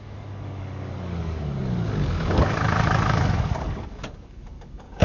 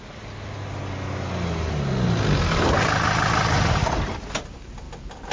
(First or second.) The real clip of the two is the second